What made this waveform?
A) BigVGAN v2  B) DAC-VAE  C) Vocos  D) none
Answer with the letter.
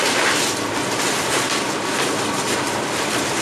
A